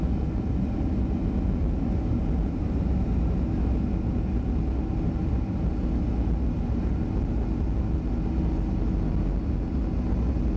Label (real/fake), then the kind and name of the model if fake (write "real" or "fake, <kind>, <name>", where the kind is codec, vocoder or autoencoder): real